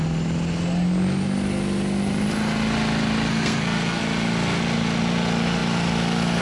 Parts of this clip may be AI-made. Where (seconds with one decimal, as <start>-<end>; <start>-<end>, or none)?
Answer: 3.3-4.0

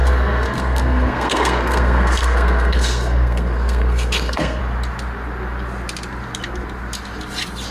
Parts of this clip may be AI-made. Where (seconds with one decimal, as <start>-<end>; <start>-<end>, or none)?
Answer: 0.0-4.6

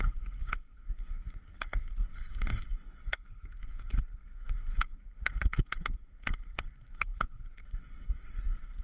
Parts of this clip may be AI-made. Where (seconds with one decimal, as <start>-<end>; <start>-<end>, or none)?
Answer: 0.0-8.8

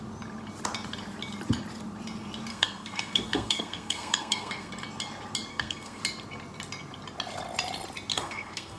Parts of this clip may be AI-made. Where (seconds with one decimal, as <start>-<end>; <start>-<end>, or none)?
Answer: 2.5-4.7; 5.5-6.0; 8.1-8.8

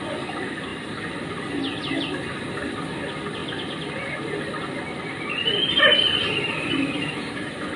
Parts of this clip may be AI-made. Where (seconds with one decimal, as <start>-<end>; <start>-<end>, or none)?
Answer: none